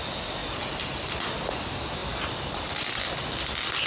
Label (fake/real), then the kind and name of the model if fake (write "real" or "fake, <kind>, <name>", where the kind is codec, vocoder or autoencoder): real